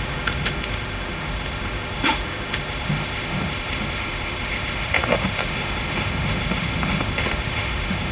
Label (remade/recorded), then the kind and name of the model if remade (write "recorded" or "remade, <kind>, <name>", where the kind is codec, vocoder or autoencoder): remade, autoencoder, DAC-VAE